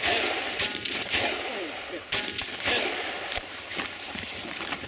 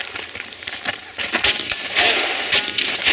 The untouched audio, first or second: second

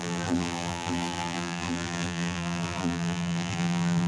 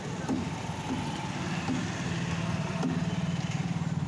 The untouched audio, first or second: second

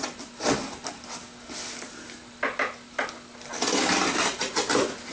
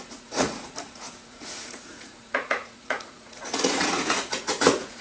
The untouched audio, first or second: first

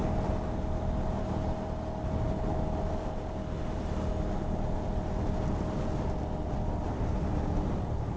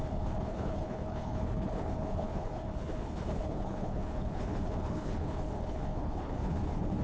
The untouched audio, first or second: first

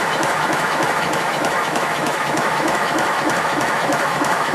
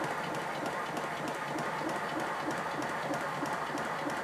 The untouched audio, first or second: second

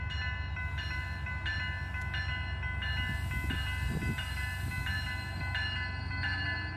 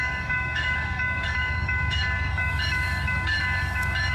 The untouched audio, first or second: first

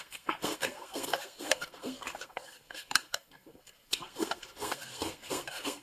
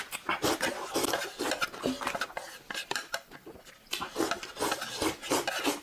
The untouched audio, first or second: second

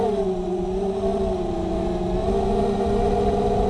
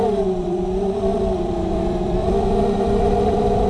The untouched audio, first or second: first